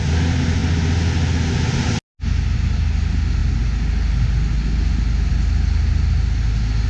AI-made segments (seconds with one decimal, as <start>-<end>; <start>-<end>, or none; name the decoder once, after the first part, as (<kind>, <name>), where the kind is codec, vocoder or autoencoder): none